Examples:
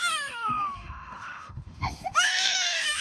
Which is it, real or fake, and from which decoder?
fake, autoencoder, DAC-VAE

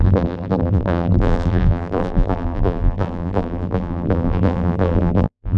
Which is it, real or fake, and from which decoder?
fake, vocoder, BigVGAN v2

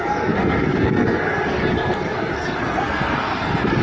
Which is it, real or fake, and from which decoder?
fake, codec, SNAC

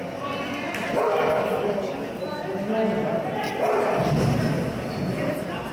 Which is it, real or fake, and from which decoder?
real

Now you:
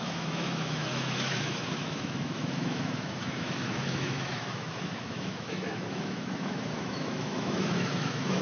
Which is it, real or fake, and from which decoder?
fake, autoencoder, DAC-VAE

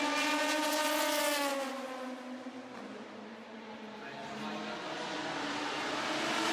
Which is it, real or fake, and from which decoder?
real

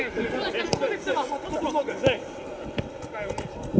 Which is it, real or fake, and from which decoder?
real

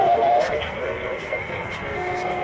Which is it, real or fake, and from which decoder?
fake, codec, SNAC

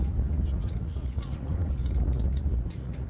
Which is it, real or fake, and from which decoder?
fake, vocoder, Vocos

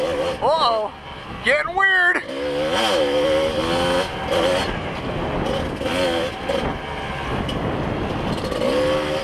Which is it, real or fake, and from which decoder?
real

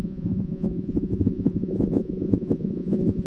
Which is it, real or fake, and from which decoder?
fake, vocoder, Vocos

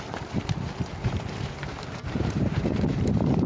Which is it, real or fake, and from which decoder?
fake, vocoder, BigVGAN v2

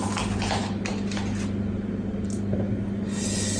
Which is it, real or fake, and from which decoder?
real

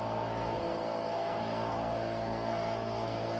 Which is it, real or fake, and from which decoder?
fake, codec, SNAC